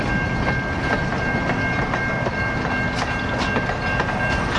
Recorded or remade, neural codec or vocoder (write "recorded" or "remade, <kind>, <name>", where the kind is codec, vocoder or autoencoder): recorded